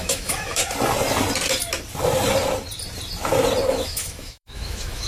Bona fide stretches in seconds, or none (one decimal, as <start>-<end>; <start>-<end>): 0.6-3.7